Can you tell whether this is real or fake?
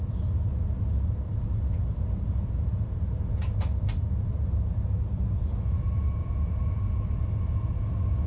real